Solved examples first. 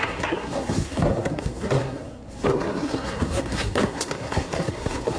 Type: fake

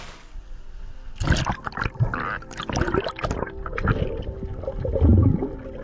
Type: real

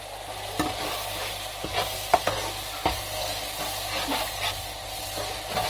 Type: real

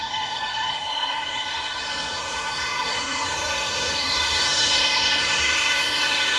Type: fake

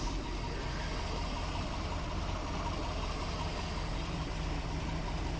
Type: real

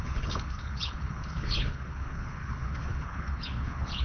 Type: fake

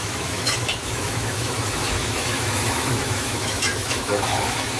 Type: fake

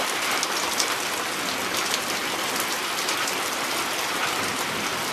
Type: real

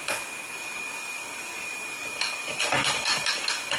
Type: fake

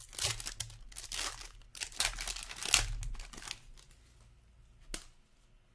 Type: real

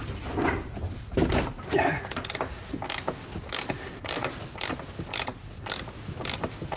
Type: real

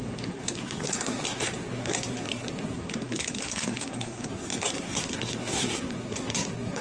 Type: fake